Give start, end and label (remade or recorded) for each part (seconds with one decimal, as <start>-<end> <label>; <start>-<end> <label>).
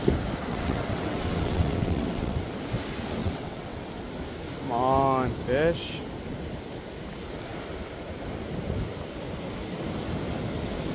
0.0-0.5 recorded; 0.5-2.4 remade; 2.4-3.2 recorded; 3.2-3.9 remade; 3.9-10.9 recorded